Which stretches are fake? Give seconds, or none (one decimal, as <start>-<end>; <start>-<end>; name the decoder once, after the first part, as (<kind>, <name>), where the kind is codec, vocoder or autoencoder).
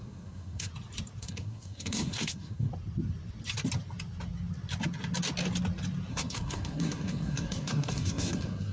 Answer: 0.0-0.7 (codec, SNAC); 1.2-2.7; 6.1-8.7